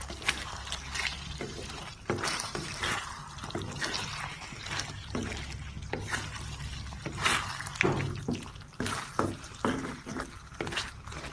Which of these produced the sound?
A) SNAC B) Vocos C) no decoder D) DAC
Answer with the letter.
C